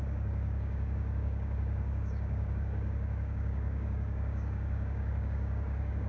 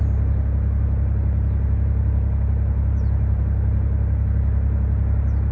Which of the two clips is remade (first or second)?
first